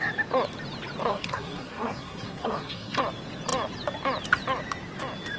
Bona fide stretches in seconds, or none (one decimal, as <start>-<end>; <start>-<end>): 0.0-1.1; 3.0-5.4